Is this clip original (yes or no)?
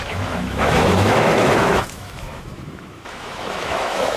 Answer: no